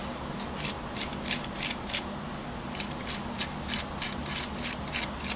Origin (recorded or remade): recorded